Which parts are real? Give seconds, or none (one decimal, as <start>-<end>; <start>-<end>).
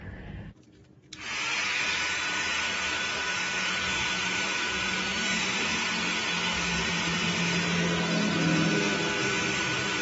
1.1-4.0; 5.7-9.2